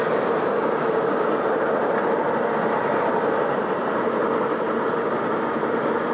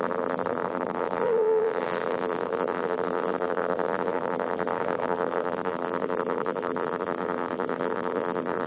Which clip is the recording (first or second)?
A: first